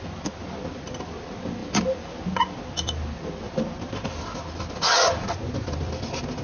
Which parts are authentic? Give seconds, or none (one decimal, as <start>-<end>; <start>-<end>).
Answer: 0.0-6.4